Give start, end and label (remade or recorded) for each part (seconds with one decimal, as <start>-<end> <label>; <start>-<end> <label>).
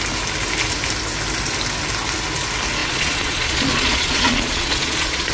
0.0-2.8 recorded; 2.8-5.3 remade